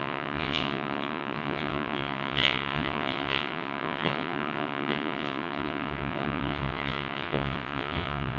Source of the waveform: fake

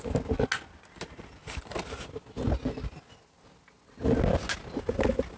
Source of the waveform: real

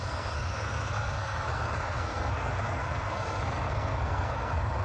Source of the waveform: fake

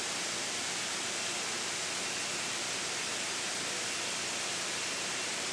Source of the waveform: real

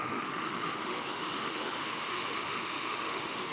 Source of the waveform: fake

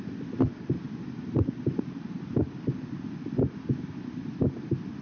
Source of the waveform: real